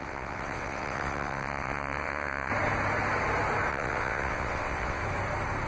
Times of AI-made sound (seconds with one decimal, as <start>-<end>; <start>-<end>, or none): 0.0-2.5; 3.7-5.0